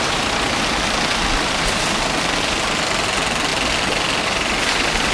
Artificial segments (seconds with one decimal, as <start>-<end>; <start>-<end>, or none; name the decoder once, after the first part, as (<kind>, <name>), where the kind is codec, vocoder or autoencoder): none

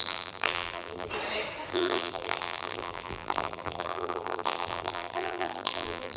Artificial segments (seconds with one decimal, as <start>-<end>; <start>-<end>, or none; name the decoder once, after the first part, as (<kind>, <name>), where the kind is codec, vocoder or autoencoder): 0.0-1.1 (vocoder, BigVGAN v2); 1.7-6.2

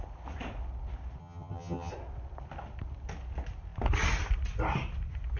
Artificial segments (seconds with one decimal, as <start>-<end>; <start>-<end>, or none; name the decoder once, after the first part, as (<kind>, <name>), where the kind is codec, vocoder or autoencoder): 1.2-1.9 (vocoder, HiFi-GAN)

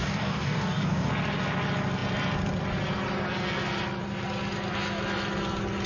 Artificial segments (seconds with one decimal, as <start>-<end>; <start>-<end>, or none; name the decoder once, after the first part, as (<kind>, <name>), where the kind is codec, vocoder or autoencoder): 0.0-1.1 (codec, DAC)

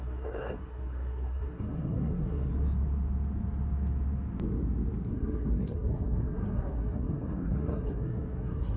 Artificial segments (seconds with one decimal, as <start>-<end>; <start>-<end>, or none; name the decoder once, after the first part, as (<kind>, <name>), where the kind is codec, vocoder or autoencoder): 0.0-2.5 (codec, SNAC); 5.1-8.8

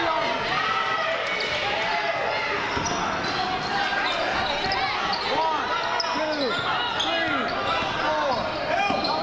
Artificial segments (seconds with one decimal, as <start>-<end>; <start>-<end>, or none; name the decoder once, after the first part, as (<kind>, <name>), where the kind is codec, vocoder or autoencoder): none

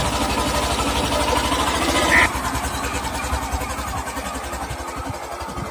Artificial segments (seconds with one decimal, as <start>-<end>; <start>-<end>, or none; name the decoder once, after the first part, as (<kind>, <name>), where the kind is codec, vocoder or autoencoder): none

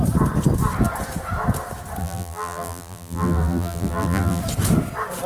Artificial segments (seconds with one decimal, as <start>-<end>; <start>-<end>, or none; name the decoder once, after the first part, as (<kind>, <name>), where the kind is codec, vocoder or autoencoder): 2.0-4.4 (vocoder, BigVGAN v2)